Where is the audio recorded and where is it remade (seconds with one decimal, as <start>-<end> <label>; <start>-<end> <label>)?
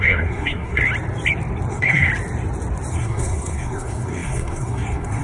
0.0-0.8 remade; 0.8-1.7 recorded; 1.7-2.1 remade; 2.1-2.9 recorded; 2.9-5.2 remade